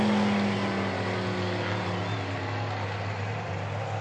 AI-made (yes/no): no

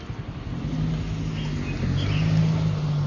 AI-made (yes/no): no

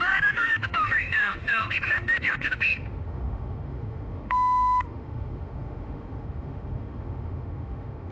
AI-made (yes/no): yes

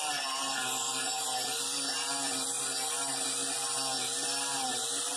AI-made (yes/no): no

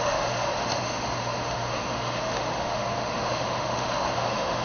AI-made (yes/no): yes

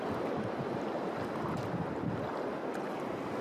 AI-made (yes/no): no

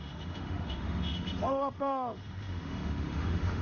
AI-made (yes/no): yes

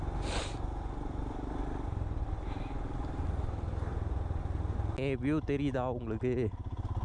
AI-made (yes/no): no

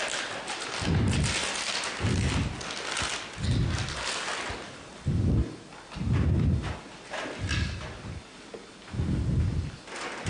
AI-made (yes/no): no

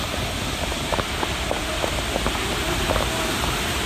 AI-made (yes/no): no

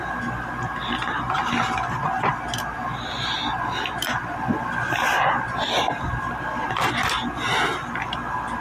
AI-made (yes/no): no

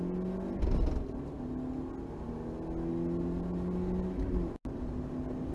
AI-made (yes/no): no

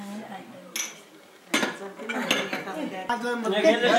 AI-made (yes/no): no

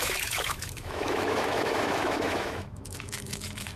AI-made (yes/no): yes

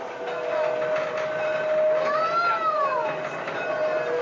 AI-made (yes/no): no